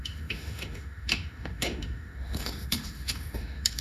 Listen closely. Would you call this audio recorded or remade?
remade